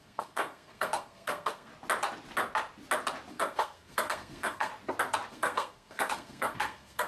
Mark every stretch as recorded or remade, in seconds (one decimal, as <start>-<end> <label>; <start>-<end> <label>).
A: 0.0-1.7 remade; 1.7-3.3 recorded; 3.3-4.7 remade; 4.7-5.3 recorded; 5.3-7.1 remade